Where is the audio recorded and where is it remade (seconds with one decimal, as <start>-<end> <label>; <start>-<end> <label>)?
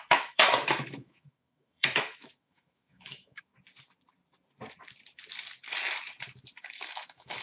0.0-3.5 remade; 3.5-6.6 recorded; 6.6-7.4 remade